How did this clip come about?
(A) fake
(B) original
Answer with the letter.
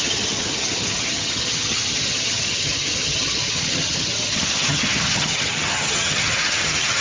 A